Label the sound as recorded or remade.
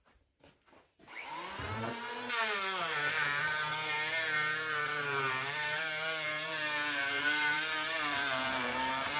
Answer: remade